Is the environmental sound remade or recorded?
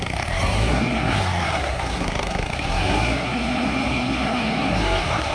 remade